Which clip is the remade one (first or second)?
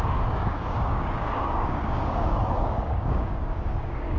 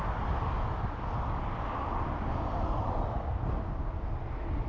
first